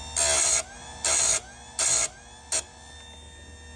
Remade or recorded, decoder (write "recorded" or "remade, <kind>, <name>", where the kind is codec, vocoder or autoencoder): recorded